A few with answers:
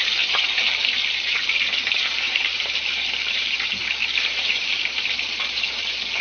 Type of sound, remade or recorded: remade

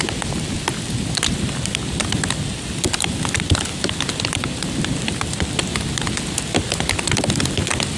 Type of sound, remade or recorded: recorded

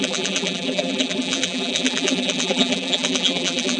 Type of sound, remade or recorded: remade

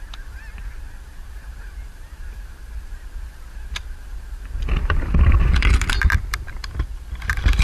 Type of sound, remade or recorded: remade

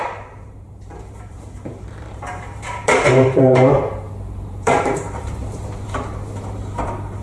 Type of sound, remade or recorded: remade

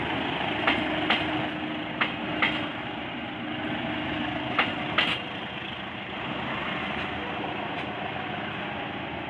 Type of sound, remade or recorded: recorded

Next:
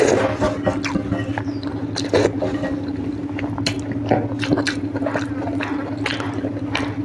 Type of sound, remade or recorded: recorded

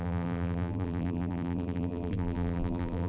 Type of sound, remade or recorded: remade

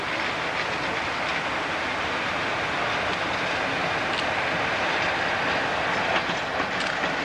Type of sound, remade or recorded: recorded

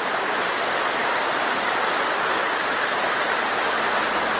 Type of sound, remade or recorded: recorded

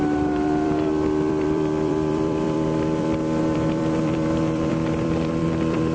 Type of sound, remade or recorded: remade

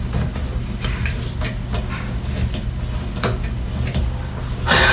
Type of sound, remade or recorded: recorded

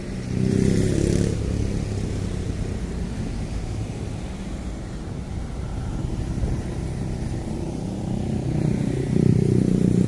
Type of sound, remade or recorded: remade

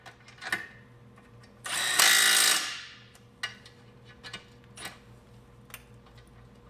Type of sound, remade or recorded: recorded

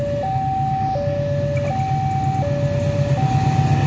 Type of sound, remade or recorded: recorded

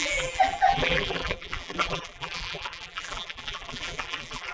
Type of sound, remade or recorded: remade